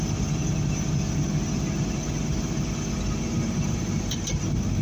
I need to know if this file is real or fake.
real